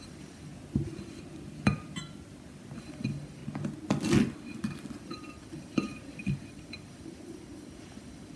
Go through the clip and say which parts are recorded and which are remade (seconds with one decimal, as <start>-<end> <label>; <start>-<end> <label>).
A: 0.0-0.5 remade; 0.5-2.8 recorded; 2.8-3.4 remade; 3.4-5.0 recorded; 5.0-8.4 remade